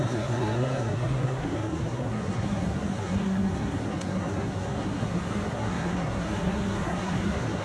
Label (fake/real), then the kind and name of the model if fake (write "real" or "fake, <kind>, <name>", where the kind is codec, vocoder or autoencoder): fake, codec, SNAC